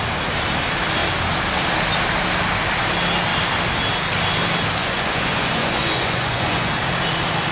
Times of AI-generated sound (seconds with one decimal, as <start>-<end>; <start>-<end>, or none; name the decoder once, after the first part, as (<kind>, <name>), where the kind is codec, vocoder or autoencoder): 4.8-6.7 (vocoder, Vocos)